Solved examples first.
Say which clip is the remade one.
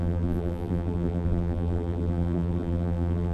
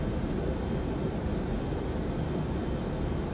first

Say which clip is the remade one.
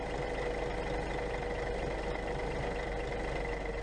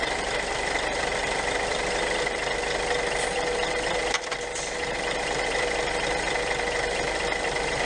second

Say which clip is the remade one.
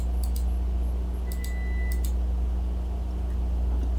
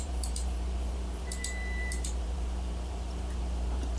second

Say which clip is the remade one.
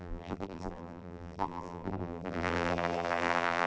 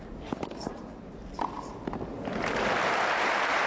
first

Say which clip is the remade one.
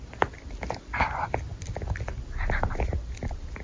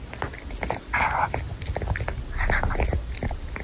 first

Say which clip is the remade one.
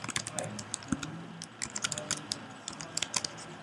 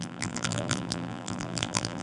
second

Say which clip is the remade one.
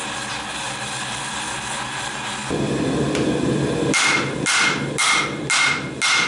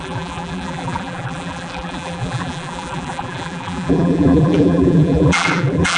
second